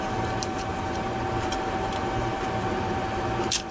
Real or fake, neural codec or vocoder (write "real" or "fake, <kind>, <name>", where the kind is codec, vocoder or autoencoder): fake, vocoder, BigVGAN v2